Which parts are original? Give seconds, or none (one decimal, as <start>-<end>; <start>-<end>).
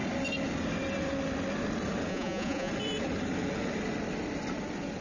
0.0-2.1; 2.7-5.0